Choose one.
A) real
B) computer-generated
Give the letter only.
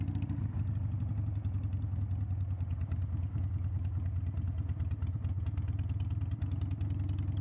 A